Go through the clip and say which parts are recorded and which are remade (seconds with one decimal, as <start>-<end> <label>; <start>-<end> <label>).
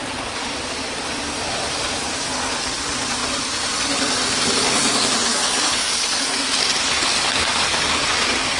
0.0-5.3 recorded; 5.3-5.9 remade; 5.9-7.1 recorded; 7.1-8.0 remade; 8.0-8.6 recorded